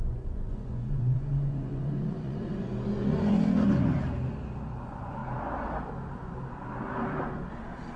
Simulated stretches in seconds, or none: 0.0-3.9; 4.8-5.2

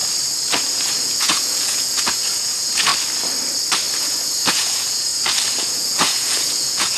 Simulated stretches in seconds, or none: 0.7-2.9; 4.0-5.1; 5.6-7.0

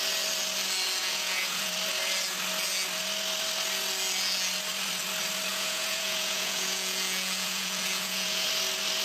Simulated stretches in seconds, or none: 1.0-1.7; 5.5-8.5

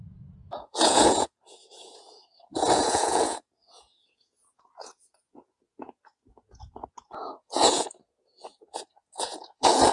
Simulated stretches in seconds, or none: 0.0-9.9